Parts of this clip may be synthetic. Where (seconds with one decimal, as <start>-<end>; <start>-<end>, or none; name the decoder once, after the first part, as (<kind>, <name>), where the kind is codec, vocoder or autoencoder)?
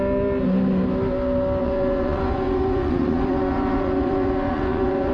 1.6-5.1 (vocoder, Vocos)